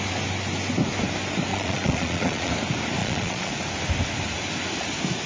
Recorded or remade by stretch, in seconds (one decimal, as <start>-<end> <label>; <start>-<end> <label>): 0.0-1.5 recorded; 1.5-2.5 remade; 2.5-3.0 recorded; 3.0-3.5 remade; 3.5-5.3 recorded